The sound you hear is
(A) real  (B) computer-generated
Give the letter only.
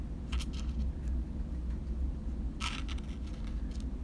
A